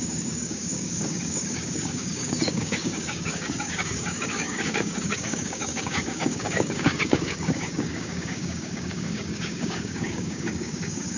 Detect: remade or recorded remade